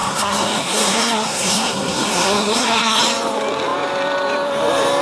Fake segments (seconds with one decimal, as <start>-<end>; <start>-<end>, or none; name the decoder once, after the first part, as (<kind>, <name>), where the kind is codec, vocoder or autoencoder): 0.0-3.0 (codec, SNAC)

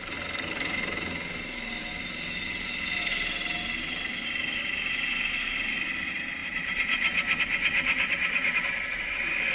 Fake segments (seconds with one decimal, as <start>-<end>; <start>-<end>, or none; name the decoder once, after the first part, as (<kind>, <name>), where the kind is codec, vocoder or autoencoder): 6.4-7.4 (vocoder, BigVGAN v2)

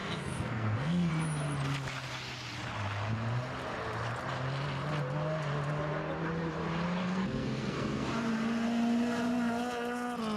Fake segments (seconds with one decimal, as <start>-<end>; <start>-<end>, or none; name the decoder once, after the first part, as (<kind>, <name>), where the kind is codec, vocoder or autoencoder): 0.0-1.1 (codec, SNAC); 7.0-8.1

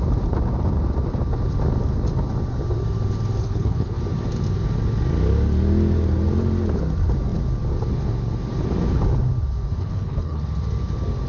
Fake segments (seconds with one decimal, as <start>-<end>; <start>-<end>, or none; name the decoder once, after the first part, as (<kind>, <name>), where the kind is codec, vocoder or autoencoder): 3.4-4.0 (codec, HILCodec); 9.8-10.4

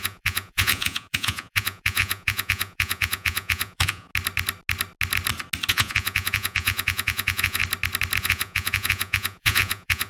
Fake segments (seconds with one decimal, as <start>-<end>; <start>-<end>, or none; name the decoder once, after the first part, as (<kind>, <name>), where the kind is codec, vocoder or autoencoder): 0.0-4.1 (vocoder, Vocos); 5.7-7.6; 8.2-10.1